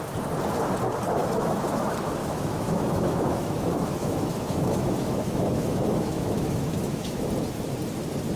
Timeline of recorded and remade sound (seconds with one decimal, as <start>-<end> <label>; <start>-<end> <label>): 0.0-1.2 recorded; 1.2-1.8 remade; 1.8-2.2 recorded; 2.2-7.2 remade; 7.2-8.4 recorded